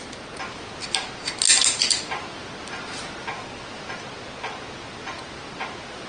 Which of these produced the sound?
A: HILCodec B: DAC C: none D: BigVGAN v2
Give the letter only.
C